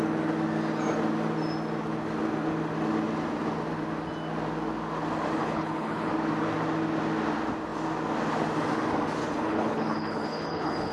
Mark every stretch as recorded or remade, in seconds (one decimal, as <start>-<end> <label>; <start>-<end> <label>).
0.0-5.4 recorded; 5.4-6.1 remade; 6.1-9.2 recorded; 9.2-10.9 remade